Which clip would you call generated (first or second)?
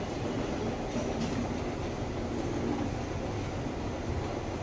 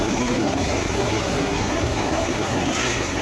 second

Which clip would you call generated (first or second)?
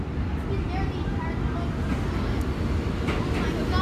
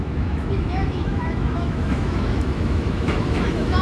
second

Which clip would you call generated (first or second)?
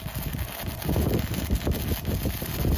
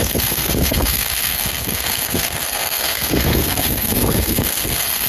second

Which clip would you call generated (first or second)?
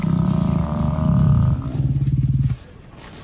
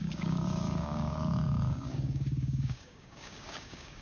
second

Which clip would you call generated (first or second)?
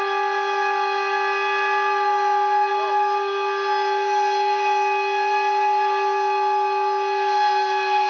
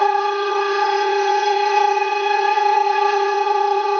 second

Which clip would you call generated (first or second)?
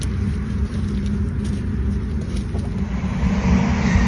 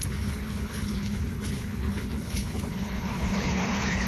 second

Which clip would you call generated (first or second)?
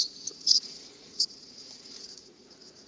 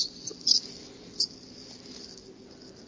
first